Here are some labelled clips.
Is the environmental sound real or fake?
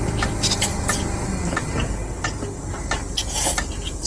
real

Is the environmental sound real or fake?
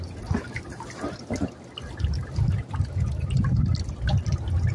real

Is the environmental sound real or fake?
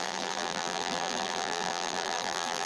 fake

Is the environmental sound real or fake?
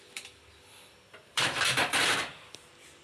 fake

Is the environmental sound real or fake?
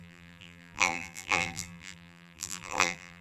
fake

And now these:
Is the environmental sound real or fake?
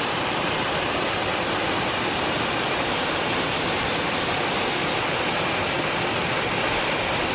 real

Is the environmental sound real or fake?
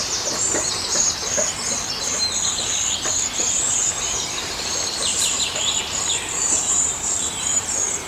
fake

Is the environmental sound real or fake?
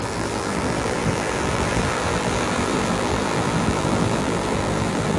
fake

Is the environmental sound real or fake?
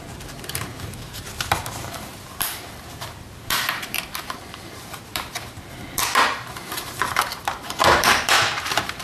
fake